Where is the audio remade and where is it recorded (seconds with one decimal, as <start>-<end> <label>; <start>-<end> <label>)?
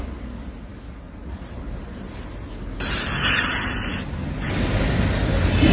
0.0-5.7 recorded